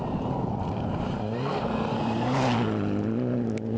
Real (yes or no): yes